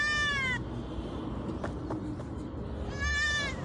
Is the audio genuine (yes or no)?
yes